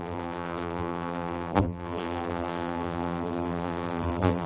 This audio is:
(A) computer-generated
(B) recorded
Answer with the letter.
A